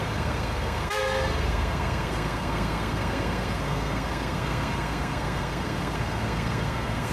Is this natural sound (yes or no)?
no